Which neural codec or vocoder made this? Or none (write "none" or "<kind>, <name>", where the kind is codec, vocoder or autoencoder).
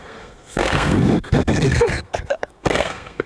codec, SNAC